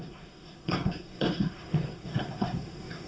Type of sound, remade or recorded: remade